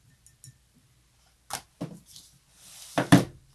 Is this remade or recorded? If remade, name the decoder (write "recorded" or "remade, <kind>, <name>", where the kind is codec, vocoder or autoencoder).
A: recorded